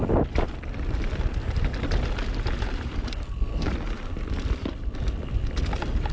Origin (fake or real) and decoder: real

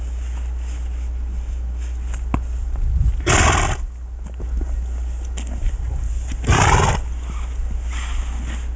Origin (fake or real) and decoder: real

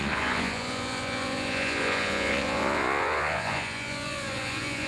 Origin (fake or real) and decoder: fake, vocoder, Vocos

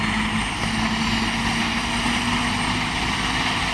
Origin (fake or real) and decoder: real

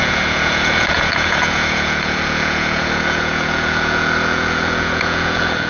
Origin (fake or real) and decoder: fake, vocoder, Vocos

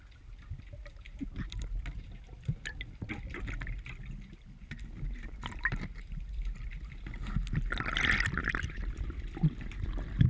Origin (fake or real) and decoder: real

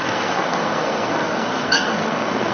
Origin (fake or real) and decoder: fake, codec, SNAC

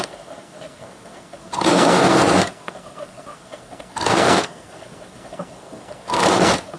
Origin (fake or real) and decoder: fake, codec, SNAC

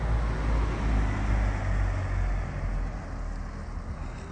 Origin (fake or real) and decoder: real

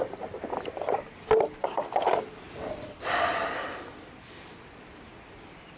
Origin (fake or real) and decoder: real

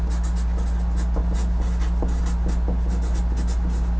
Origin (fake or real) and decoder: real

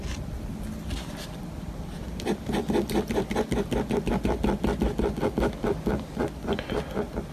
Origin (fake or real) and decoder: real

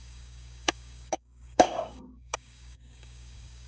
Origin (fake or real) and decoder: fake, codec, DAC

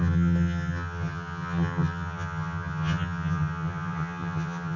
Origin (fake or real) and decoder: fake, vocoder, HiFi-GAN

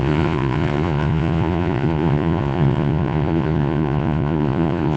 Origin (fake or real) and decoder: fake, vocoder, Vocos